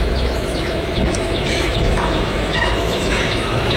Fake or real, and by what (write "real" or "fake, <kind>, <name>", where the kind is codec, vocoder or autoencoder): fake, autoencoder, DAC-VAE